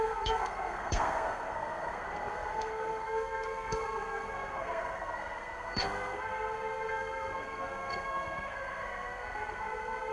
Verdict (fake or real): fake